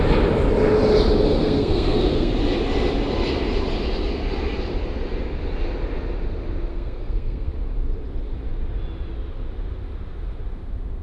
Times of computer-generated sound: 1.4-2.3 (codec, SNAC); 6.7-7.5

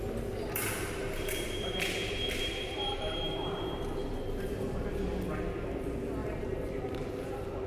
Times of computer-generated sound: 0.4-5.0 (vocoder, BigVGAN v2); 6.2-7.1

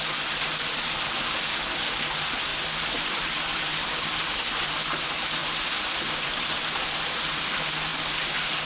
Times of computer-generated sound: 2.5-4.6 (vocoder, BigVGAN v2); 5.4-7.4

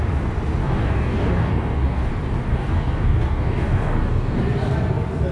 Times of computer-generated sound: 0.6-2.1 (codec, DAC); 2.5-4.4